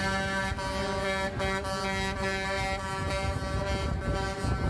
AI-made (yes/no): no